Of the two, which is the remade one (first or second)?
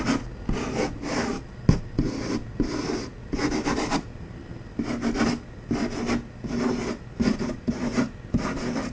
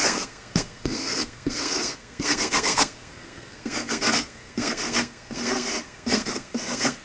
second